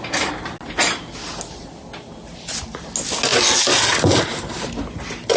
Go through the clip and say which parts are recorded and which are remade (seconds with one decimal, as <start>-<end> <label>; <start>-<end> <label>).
0.0-5.4 recorded